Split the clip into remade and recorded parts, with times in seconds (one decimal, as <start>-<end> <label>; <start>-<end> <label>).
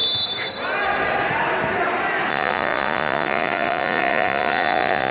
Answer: 0.0-2.3 recorded; 2.3-5.1 remade